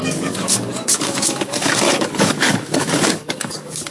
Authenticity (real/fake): fake